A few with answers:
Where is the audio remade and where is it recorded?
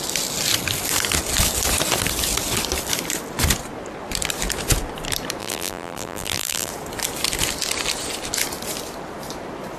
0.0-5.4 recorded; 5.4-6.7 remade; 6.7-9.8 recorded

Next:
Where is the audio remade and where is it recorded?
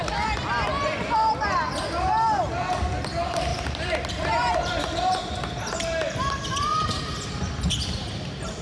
0.0-3.5 recorded; 3.5-7.0 remade; 7.0-8.6 recorded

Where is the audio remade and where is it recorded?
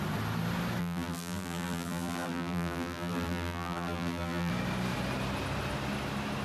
0.0-0.8 recorded; 0.8-4.5 remade; 4.5-6.4 recorded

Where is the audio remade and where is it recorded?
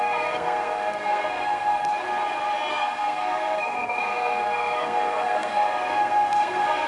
0.0-1.9 remade; 1.9-2.7 recorded; 2.7-6.9 remade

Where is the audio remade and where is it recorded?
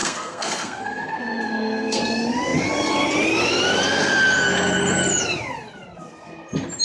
0.0-2.0 remade; 2.0-6.8 recorded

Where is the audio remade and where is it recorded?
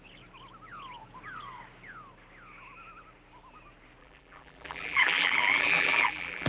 0.0-4.0 recorded; 4.0-6.5 remade